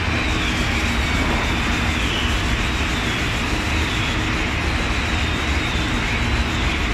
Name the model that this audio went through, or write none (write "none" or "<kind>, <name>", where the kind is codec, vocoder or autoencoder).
none